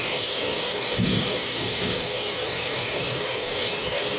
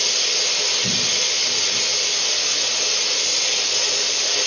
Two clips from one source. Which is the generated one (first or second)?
first